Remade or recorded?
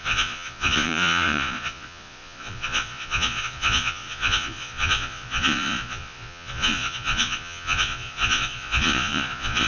remade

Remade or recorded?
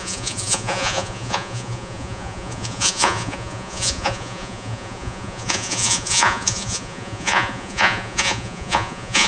remade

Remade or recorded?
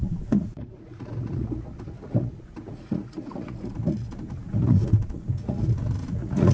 remade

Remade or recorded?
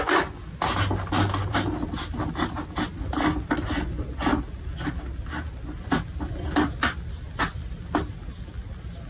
recorded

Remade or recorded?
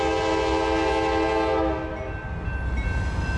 recorded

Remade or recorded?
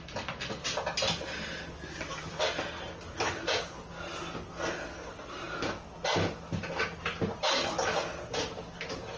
recorded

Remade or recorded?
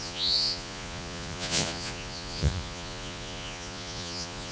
remade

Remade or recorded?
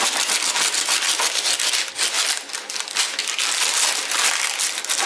recorded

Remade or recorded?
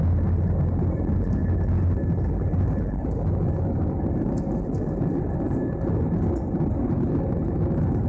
recorded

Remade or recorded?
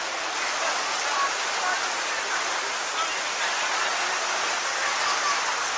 recorded